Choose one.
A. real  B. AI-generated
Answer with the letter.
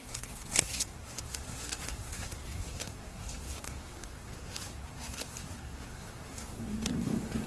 B